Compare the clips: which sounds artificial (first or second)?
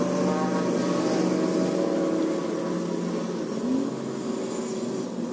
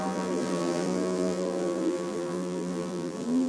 second